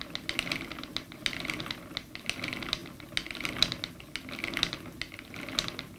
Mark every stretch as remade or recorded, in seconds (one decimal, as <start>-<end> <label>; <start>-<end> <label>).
0.0-6.0 recorded